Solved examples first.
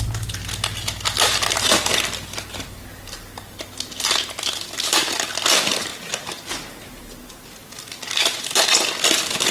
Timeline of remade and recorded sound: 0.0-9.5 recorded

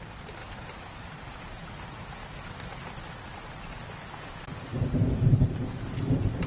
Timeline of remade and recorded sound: 0.0-0.4 recorded; 0.4-1.7 remade; 1.7-4.7 recorded; 4.7-6.5 remade

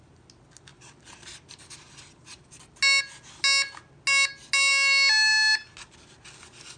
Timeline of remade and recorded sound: 0.0-6.8 recorded

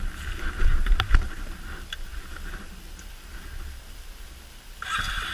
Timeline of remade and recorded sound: 0.0-5.3 recorded

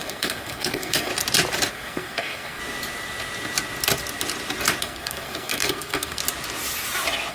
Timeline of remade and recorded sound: 0.0-1.1 remade; 1.1-1.7 recorded; 1.7-2.6 remade; 2.6-4.8 recorded; 4.8-6.2 remade; 6.2-7.3 recorded

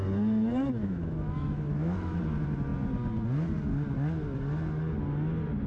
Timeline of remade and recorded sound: 0.0-0.8 recorded; 0.8-2.2 remade; 2.2-5.7 recorded

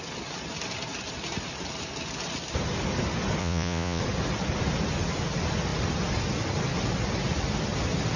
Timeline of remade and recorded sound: 0.0-3.4 recorded; 3.4-4.0 remade; 4.0-8.2 recorded